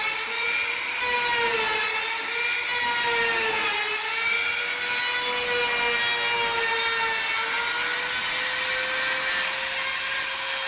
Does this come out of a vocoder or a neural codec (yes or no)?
no